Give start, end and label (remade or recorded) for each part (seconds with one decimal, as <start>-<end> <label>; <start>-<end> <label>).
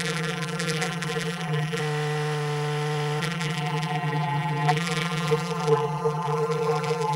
0.0-1.8 remade; 1.8-3.2 recorded; 3.2-7.2 remade